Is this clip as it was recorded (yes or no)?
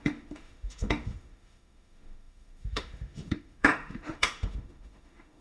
no